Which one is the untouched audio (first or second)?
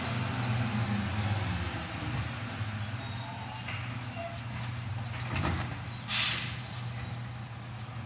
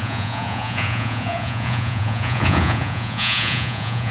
first